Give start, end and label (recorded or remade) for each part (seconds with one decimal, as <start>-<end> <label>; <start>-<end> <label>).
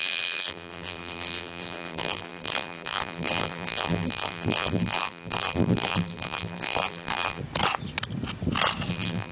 0.0-7.4 remade; 7.4-8.9 recorded; 8.9-9.3 remade